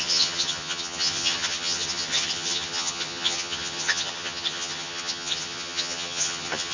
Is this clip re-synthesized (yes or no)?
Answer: yes